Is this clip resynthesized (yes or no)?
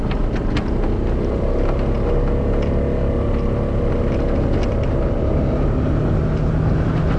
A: no